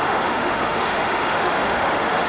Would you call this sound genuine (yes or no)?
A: no